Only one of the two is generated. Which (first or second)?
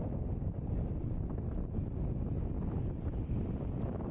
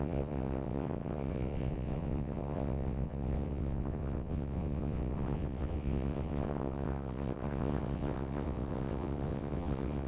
second